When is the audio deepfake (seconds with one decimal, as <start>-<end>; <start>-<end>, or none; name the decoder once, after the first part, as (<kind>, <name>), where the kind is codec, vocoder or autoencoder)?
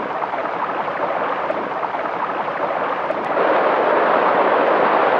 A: none